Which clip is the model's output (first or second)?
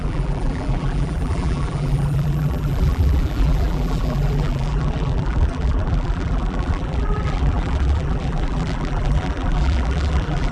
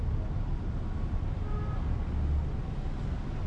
first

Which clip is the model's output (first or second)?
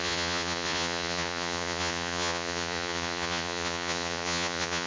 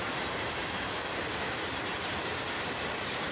first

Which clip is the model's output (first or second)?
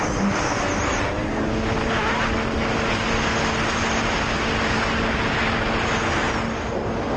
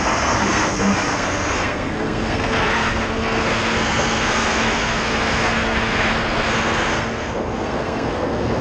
second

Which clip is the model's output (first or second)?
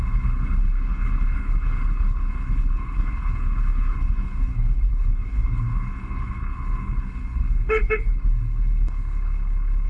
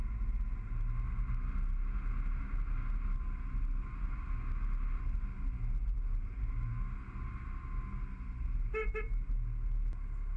first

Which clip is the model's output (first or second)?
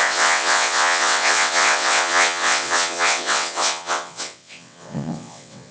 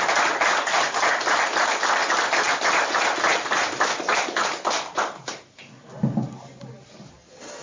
first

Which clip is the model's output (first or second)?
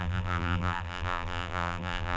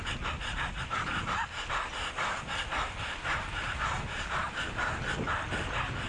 first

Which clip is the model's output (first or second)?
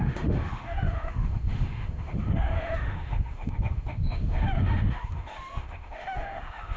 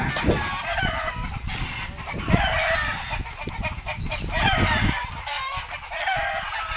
first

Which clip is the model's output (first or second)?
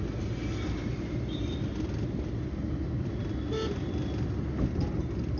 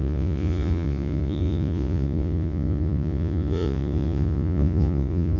second